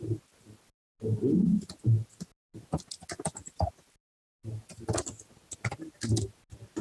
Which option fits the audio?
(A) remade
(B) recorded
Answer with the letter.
B